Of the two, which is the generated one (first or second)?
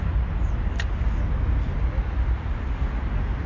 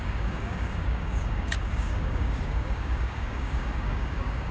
second